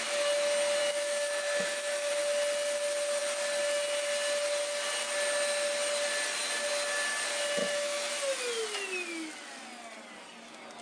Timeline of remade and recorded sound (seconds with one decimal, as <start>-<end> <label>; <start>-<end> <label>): 0.0-0.8 recorded; 0.8-2.1 remade; 2.1-7.6 recorded; 7.6-8.1 remade; 8.1-10.8 recorded